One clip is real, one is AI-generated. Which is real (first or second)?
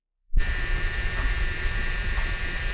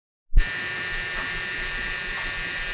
second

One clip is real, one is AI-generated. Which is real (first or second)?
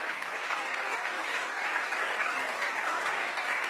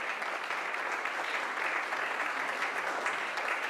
second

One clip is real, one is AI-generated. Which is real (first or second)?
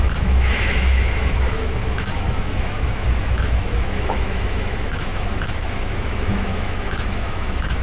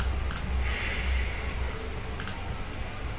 second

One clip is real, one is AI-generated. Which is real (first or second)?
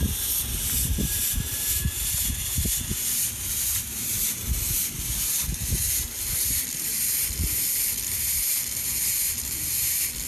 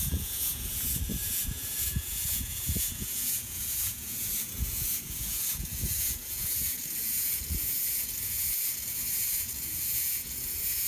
first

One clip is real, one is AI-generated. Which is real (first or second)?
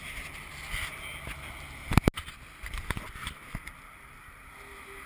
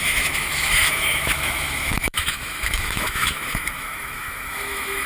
first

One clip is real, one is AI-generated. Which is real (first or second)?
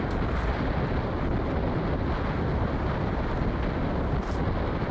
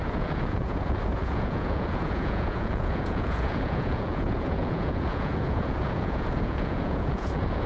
first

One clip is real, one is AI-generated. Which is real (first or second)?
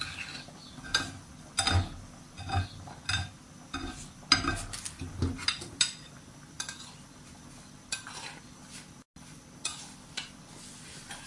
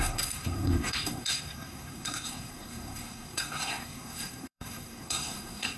first